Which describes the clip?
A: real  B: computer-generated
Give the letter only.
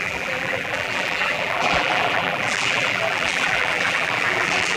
B